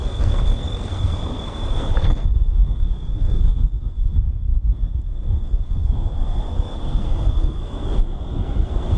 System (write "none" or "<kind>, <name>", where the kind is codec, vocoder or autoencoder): codec, SNAC